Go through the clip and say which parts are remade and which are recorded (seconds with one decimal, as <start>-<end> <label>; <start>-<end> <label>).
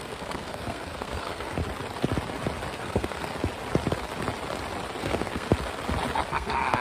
0.0-1.6 remade; 1.6-2.7 recorded; 2.7-3.3 remade; 3.3-5.0 recorded; 5.0-5.5 remade; 5.5-6.3 recorded; 6.3-6.8 remade